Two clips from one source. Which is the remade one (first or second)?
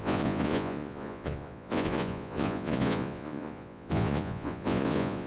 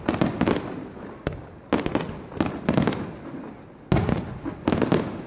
first